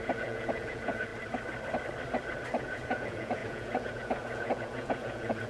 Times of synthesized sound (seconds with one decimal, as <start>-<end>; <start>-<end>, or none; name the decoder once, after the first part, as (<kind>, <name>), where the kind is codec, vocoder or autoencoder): 0.0-1.1 (vocoder, Vocos); 2.6-5.5